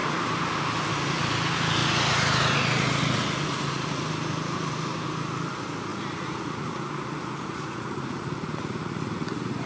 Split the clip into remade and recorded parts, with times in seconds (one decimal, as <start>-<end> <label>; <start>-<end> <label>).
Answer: 0.0-1.8 recorded; 1.8-4.0 remade; 4.0-5.9 recorded; 5.9-9.7 remade